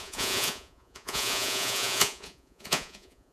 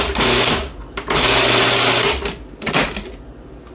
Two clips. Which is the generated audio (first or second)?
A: first